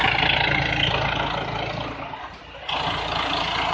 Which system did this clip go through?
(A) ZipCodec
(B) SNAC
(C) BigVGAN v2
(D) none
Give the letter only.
D